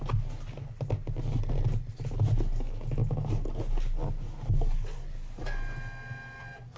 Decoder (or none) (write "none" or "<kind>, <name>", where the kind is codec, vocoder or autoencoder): none